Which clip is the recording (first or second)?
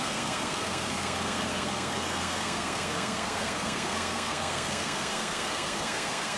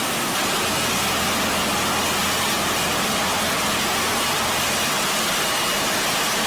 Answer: second